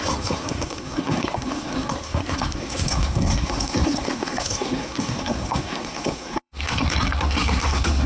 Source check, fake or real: fake